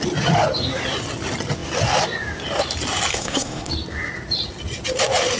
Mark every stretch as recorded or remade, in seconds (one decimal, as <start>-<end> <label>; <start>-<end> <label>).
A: 0.0-3.1 recorded; 3.1-3.7 remade; 3.7-5.4 recorded